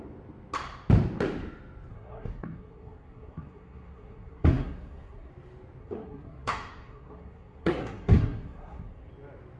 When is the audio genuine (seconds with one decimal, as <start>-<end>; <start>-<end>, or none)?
0.0-1.9; 5.3-5.8; 9.1-9.6